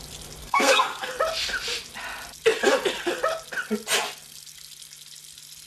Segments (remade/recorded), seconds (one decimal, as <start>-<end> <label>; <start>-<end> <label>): 0.0-0.4 recorded; 0.4-1.1 remade; 1.1-5.7 recorded